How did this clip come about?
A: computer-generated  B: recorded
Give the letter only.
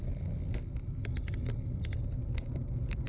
B